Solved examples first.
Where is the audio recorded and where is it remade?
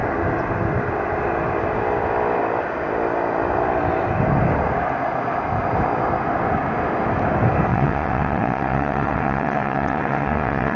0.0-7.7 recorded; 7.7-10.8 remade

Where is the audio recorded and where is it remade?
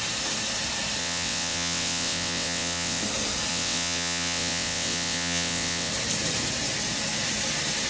0.0-1.0 recorded; 1.0-3.0 remade; 3.0-3.5 recorded; 3.5-5.9 remade; 5.9-7.9 recorded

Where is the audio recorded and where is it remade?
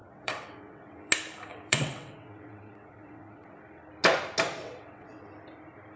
0.0-1.1 remade; 1.1-1.5 recorded; 1.5-3.6 remade; 3.6-4.6 recorded; 4.6-5.3 remade; 5.3-6.0 recorded